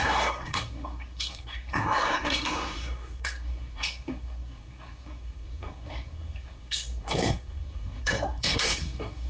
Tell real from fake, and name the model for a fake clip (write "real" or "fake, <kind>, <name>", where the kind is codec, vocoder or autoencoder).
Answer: fake, codec, SNAC